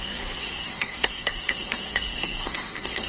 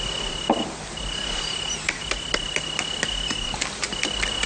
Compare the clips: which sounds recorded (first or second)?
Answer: second